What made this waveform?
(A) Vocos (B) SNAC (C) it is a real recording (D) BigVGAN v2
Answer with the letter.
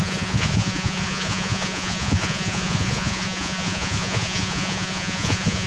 A